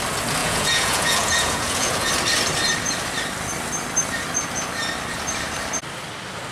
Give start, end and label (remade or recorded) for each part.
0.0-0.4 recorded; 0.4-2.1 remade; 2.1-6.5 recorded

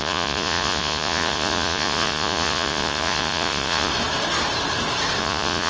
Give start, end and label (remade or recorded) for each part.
0.0-3.9 remade; 3.9-5.2 recorded; 5.2-5.7 remade

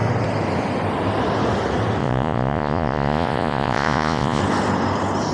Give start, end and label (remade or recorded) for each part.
0.0-2.0 recorded; 2.0-4.4 remade; 4.4-5.3 recorded

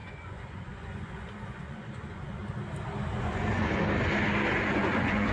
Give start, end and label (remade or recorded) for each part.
0.0-2.4 remade; 2.4-3.1 recorded; 3.1-3.8 remade; 3.8-4.5 recorded; 4.5-5.3 remade

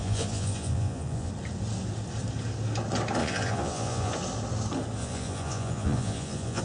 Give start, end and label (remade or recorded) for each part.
0.0-1.3 remade; 1.3-3.2 recorded; 3.2-4.1 remade; 4.1-5.0 recorded; 5.0-6.6 remade

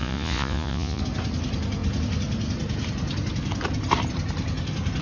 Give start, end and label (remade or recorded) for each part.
0.0-1.0 remade; 1.0-5.0 recorded

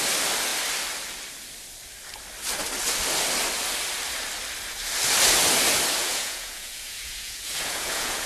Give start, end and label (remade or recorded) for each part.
0.0-6.0 recorded; 6.0-8.3 remade

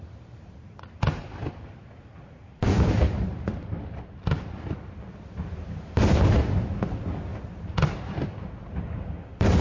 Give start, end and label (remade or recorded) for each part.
0.0-9.6 recorded